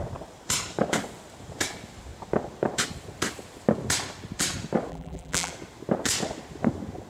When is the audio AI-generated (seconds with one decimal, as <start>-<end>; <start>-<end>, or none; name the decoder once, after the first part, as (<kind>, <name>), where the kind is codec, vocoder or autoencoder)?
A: 4.9-5.5 (vocoder, BigVGAN v2)